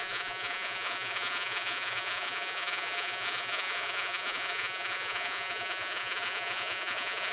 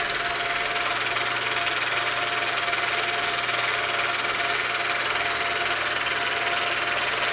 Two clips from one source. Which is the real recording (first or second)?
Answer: second